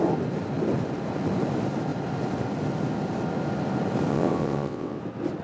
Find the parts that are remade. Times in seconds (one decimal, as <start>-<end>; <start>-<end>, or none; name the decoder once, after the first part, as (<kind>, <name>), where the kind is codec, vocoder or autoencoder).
4.1-5.0 (vocoder, WaveNeXt)

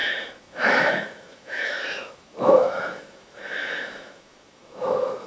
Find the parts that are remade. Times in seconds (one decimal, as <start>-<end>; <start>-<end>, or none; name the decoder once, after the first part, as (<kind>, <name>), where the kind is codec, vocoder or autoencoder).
0.0-5.3 (autoencoder, DAC-VAE)

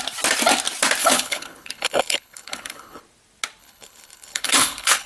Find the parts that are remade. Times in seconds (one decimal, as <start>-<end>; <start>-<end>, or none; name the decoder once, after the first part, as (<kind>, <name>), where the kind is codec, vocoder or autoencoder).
1.0-3.0 (codec, HILCodec); 3.6-5.1

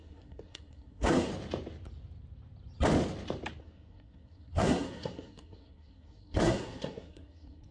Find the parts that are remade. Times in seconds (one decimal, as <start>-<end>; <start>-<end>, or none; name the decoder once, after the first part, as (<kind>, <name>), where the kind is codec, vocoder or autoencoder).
0.0-1.3 (codec, SNAC); 3.6-7.7

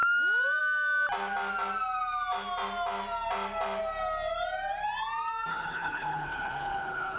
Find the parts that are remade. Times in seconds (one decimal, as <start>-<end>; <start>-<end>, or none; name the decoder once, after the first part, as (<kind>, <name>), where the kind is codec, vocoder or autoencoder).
5.5-7.2 (codec, HILCodec)

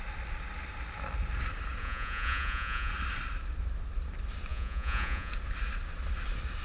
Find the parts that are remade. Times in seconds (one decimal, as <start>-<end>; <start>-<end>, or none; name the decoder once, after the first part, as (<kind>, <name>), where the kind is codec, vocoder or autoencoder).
1.8-2.9 (vocoder, Vocos); 4.5-5.3